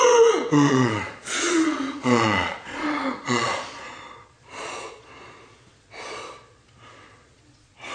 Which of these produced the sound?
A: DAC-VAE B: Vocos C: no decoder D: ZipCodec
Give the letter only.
B